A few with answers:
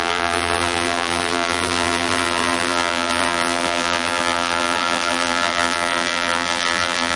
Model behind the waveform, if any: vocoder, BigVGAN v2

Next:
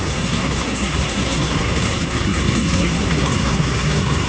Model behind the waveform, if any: codec, SNAC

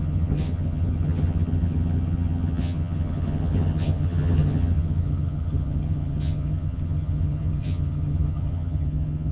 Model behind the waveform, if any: vocoder, HiFi-GAN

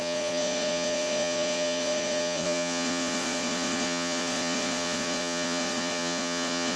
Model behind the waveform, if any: vocoder, Vocos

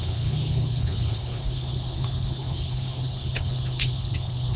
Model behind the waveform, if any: codec, HILCodec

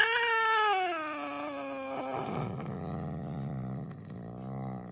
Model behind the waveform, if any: none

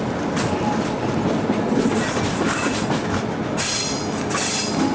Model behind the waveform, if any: none